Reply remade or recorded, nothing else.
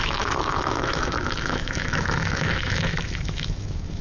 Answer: remade